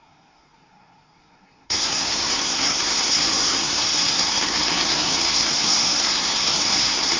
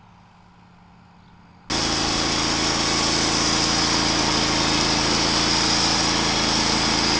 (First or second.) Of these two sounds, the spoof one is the first